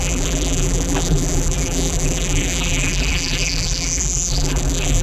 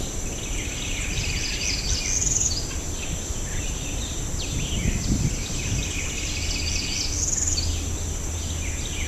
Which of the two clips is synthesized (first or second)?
first